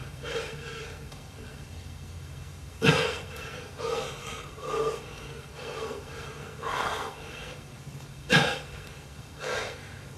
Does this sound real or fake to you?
fake